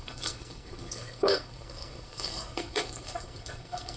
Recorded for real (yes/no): no